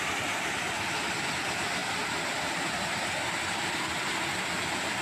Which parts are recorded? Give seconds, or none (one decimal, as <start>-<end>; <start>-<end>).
0.0-5.0